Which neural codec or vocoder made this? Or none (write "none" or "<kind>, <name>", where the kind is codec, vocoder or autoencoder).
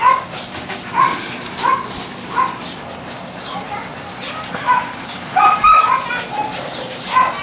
none